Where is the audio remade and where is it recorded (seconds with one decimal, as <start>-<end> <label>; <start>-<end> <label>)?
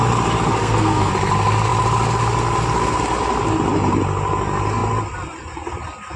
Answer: 0.0-0.5 recorded; 0.5-1.1 remade; 1.1-6.2 recorded